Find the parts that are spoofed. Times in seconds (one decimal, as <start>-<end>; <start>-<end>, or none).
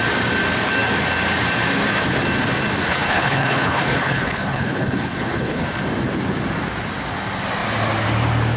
2.9-5.6